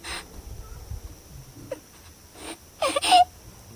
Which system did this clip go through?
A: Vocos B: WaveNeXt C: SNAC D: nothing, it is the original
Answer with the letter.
D